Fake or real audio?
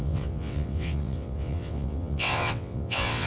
fake